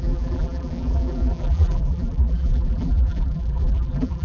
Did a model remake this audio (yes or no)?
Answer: yes